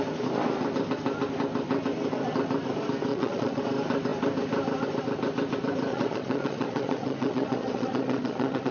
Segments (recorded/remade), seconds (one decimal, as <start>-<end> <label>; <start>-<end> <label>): 0.0-3.1 recorded; 3.1-3.6 remade; 3.6-5.9 recorded; 5.9-8.7 remade